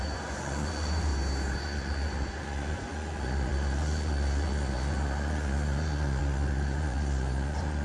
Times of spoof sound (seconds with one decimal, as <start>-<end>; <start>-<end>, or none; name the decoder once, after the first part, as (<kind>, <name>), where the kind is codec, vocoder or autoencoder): 0.0-1.1 (vocoder, Vocos); 1.6-7.8